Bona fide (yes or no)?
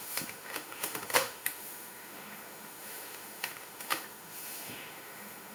no